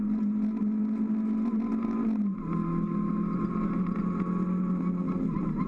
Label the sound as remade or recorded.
recorded